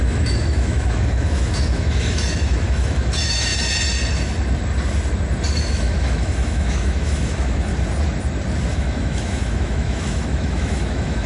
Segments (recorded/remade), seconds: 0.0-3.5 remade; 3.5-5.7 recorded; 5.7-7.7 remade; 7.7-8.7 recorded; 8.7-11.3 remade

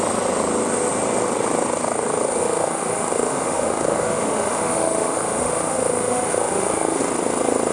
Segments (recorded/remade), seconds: 0.0-2.4 recorded; 2.4-7.0 remade; 7.0-7.7 recorded

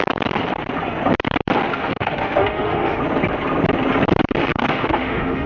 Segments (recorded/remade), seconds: 0.0-1.7 recorded; 1.7-3.0 remade; 3.0-4.4 recorded; 4.4-5.5 remade

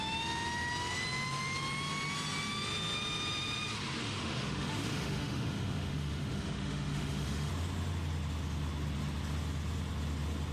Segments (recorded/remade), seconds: 0.0-4.0 recorded; 4.0-7.5 remade; 7.5-10.5 recorded

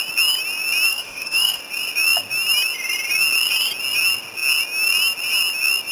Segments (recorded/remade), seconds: 0.0-0.9 recorded; 0.9-1.6 remade; 1.6-5.9 recorded